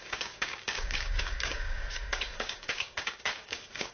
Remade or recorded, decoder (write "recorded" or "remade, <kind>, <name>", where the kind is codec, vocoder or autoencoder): remade, codec, DAC